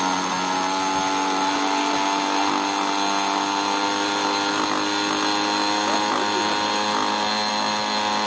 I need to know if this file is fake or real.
real